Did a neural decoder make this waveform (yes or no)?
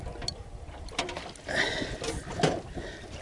no